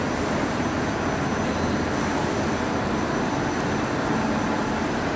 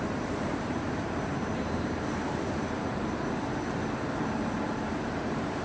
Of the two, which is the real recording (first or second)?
first